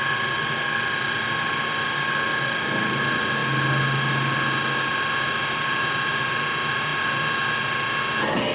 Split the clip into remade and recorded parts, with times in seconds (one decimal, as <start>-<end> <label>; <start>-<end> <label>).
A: 0.0-8.5 recorded